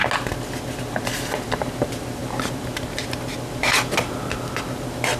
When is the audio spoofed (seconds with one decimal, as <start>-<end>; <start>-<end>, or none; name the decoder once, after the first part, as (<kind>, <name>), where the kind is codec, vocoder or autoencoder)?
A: 1.0-2.2 (vocoder, BigVGAN v2); 4.6-5.2